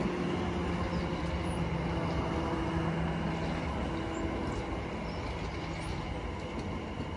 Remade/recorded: recorded